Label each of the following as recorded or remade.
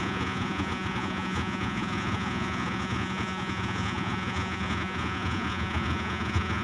remade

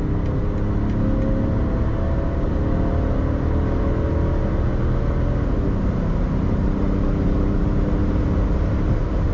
recorded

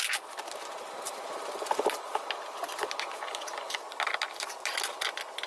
recorded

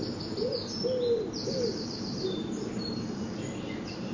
recorded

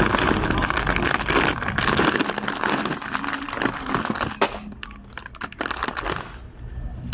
recorded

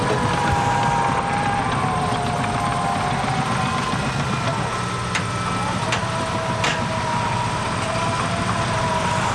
recorded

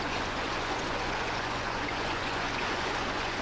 remade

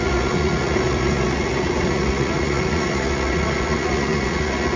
remade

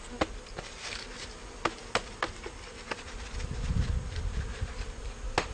recorded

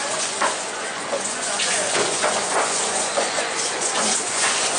remade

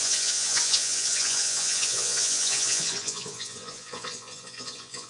remade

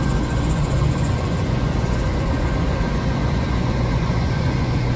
remade